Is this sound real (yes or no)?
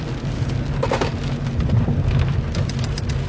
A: yes